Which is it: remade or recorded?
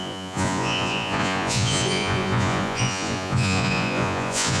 remade